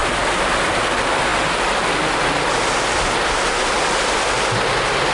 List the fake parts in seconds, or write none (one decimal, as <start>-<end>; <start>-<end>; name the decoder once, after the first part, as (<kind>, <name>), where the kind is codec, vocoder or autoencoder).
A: none